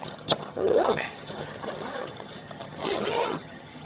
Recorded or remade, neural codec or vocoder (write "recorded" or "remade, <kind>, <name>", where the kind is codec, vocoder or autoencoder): remade, vocoder, HiFi-GAN